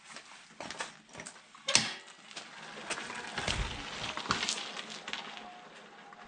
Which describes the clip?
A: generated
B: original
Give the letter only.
B